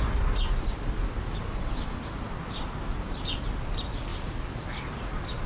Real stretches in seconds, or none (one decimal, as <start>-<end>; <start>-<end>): 0.0-5.5